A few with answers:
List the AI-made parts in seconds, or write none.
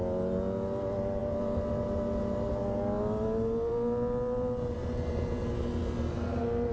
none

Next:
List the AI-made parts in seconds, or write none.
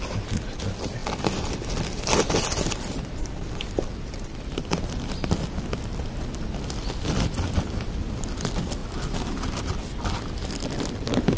1.0-4.7; 8.8-9.6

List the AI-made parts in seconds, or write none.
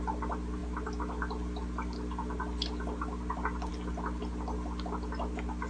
none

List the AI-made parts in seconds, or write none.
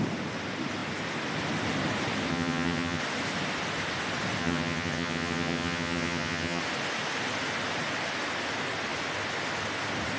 2.3-3.0; 4.4-6.6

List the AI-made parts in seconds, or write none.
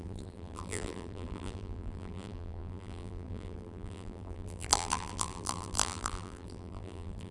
0.0-7.3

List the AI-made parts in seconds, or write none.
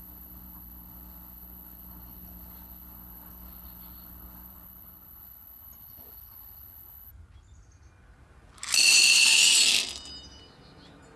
0.0-7.1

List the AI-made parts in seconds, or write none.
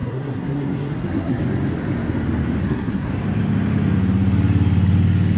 0.0-1.4; 2.6-3.1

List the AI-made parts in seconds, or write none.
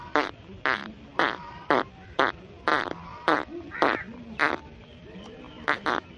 0.0-6.2